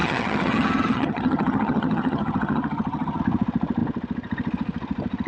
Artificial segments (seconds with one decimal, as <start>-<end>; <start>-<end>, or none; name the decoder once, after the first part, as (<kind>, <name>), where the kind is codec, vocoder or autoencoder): 0.0-3.2 (vocoder, HiFi-GAN)